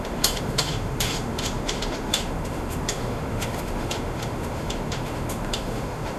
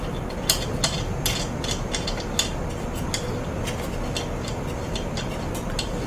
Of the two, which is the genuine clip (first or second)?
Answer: second